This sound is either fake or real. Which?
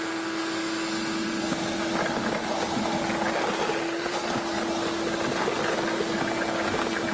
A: real